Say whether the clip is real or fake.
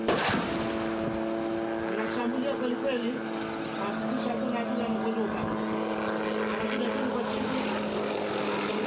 real